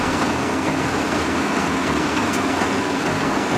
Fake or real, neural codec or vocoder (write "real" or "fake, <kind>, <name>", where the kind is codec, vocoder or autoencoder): fake, codec, SNAC